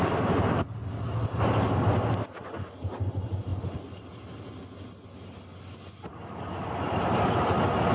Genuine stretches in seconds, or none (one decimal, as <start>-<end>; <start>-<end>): 0.0-7.9